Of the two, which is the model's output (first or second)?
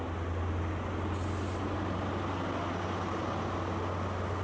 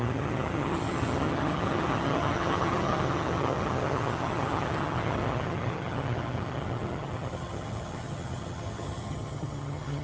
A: second